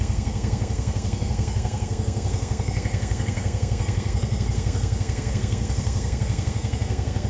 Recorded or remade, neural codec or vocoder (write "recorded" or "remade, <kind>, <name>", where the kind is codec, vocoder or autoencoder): remade, codec, SNAC